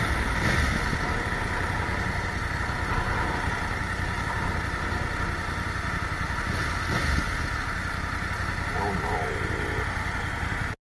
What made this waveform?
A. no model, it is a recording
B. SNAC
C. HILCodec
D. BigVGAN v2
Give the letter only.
A